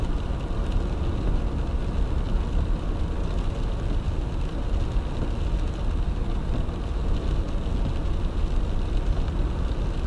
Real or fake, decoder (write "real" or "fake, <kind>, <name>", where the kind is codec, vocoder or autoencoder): real